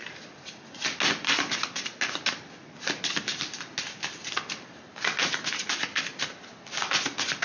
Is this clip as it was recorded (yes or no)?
yes